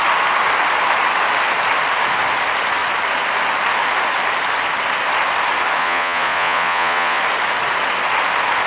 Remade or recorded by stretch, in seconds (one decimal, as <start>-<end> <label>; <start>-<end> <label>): 0.0-5.8 recorded; 5.8-7.2 remade; 7.2-8.7 recorded